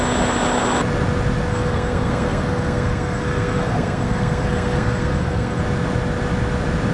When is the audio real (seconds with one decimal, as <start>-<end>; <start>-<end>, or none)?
0.0-1.5; 5.6-6.9